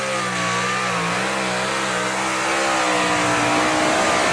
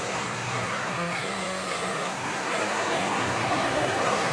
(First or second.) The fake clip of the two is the second